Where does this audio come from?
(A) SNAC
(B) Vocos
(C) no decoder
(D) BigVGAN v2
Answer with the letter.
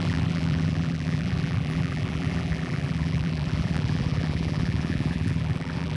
D